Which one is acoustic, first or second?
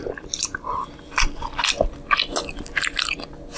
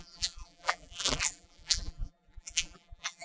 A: first